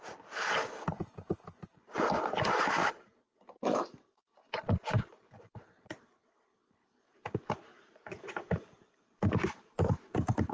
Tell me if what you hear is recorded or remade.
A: recorded